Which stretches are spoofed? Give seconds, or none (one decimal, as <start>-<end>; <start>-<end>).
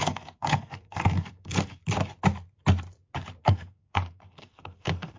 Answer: 0.0-1.8; 3.4-5.2